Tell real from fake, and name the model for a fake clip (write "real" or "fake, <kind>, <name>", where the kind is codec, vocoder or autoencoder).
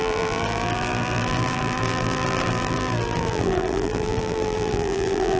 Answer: fake, vocoder, BigVGAN v2